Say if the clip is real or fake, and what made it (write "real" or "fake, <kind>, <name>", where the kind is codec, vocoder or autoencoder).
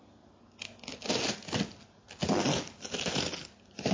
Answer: real